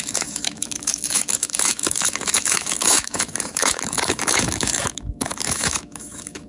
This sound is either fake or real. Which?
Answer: fake